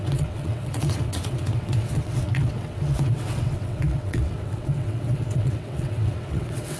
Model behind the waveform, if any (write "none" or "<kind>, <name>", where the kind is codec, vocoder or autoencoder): vocoder, WaveNeXt